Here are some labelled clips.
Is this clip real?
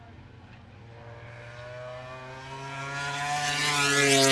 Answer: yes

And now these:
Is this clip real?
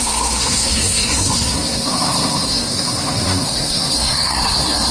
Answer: no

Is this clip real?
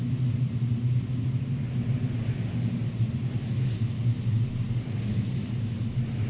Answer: yes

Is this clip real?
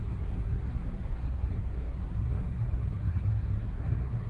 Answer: no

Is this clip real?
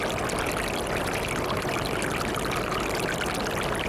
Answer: yes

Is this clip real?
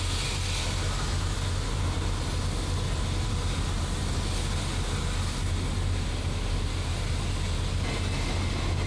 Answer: yes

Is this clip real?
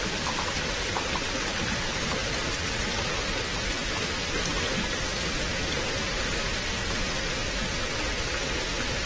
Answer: yes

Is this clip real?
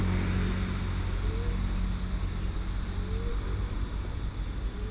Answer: yes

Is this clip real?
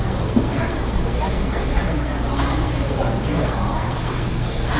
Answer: no